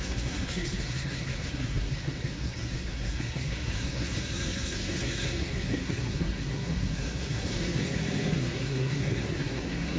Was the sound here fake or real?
fake